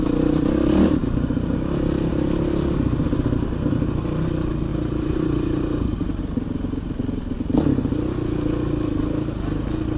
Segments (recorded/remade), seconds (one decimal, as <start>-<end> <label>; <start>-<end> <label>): 0.0-4.7 recorded; 4.7-6.2 remade; 6.2-10.0 recorded